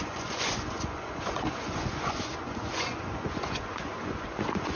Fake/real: fake